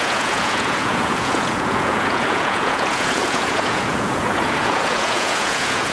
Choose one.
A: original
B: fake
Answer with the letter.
B